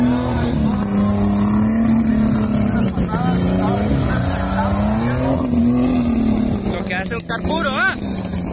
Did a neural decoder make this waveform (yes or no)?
no